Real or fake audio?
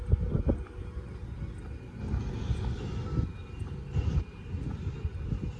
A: real